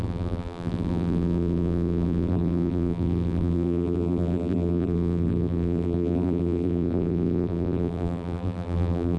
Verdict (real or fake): fake